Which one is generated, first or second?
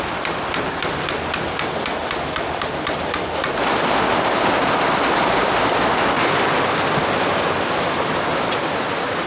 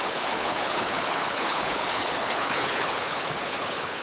second